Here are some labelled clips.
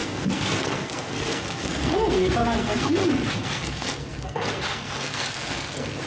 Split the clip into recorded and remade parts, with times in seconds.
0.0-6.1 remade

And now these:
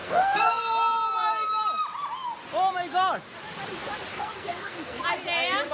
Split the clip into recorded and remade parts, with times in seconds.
0.0-0.6 remade; 0.6-4.1 recorded; 4.1-5.0 remade; 5.0-5.7 recorded

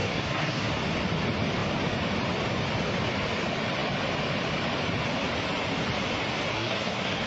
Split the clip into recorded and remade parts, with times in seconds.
0.0-0.7 remade; 0.7-6.5 recorded; 6.5-7.3 remade